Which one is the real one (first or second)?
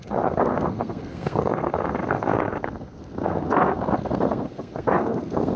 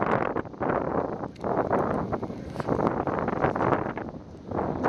second